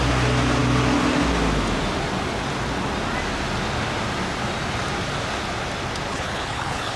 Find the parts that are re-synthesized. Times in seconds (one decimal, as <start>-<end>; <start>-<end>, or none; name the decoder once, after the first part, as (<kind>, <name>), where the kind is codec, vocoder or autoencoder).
6.1-7.0 (codec, HILCodec)